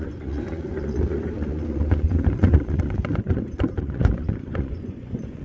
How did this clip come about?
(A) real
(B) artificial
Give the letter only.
B